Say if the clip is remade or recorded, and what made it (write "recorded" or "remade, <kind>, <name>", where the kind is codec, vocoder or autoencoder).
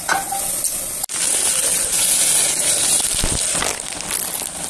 recorded